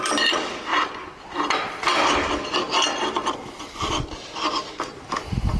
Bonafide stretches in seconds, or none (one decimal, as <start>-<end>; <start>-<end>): 0.0-5.6